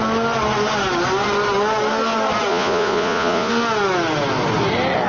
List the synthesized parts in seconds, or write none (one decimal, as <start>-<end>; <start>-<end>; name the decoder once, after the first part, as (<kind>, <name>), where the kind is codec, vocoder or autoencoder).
2.5-3.5 (vocoder, Vocos)